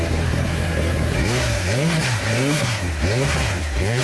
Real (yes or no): no